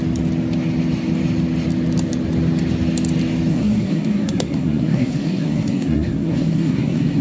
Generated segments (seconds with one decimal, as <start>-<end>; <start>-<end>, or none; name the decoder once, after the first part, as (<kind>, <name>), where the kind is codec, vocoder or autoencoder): 3.5-7.2 (codec, SNAC)